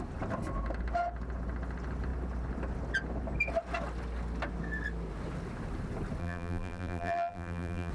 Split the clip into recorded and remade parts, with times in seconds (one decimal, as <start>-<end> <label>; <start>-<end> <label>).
0.0-6.2 recorded; 6.2-7.9 remade